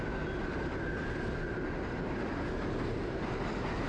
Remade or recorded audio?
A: recorded